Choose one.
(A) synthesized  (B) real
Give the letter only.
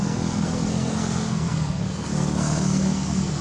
A